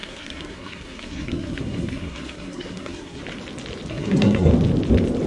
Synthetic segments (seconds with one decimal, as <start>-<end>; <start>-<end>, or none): 0.0-3.2; 3.9-4.5